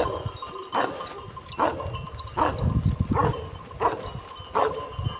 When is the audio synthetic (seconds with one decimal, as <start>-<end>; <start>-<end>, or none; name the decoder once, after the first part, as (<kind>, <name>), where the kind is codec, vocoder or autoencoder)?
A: none